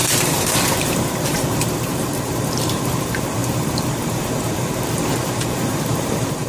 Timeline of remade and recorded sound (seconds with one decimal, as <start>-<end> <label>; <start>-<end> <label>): 0.0-6.5 remade